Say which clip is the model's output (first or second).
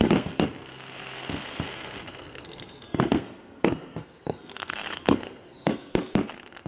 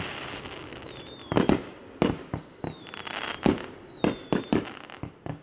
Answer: first